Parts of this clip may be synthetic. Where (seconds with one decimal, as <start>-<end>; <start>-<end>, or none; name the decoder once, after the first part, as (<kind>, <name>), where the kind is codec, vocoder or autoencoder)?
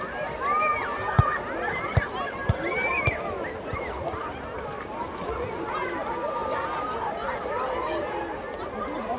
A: none